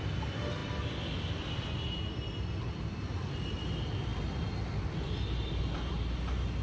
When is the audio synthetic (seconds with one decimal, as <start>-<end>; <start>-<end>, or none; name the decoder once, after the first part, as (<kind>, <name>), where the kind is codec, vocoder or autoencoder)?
none